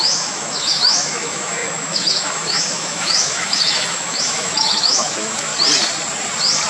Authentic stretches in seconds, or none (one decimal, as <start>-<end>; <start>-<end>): 5.5-6.7